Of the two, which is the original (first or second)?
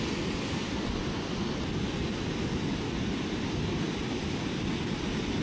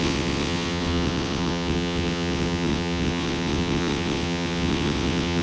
first